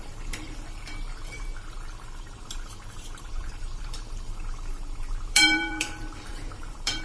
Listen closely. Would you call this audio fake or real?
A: fake